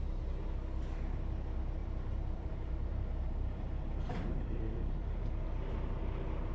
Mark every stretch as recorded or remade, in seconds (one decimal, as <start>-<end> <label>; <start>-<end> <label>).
0.0-1.8 recorded; 1.8-5.3 remade; 5.3-6.5 recorded